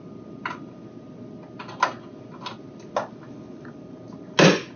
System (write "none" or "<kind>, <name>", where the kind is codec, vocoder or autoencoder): none